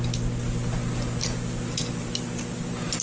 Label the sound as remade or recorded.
recorded